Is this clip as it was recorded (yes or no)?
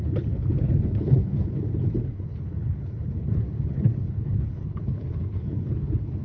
no